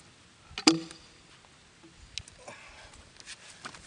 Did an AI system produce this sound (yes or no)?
no